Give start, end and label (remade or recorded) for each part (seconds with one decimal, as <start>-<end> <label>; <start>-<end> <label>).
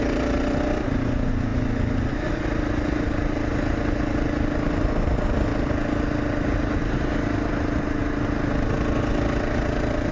0.0-10.1 recorded